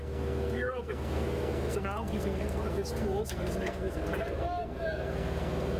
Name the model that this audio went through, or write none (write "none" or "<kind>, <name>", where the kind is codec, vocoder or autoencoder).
codec, SNAC